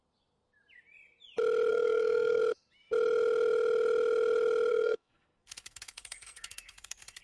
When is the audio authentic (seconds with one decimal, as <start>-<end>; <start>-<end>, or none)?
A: 0.0-1.7; 2.4-4.7